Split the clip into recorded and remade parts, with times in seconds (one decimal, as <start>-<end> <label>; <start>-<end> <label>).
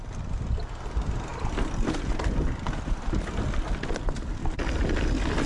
0.0-5.5 recorded